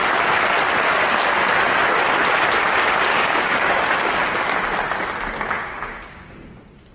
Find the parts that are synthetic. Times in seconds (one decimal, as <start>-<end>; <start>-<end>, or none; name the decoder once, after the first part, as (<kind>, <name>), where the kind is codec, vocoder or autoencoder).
3.1-4.2 (codec, DAC); 5.6-6.3